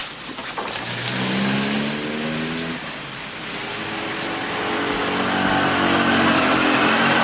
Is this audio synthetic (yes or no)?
no